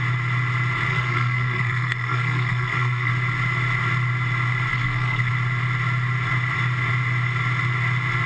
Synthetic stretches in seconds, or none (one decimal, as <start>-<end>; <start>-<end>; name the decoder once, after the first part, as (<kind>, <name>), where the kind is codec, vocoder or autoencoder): 0.9-3.1 (codec, SNAC); 4.7-5.3